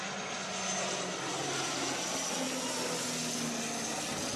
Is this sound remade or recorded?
recorded